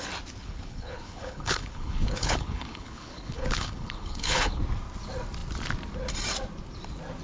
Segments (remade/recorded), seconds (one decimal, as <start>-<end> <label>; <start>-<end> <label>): 0.0-0.4 recorded; 0.4-4.6 remade; 4.6-7.2 recorded